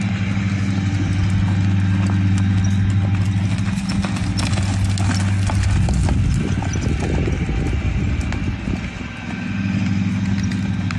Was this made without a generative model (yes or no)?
yes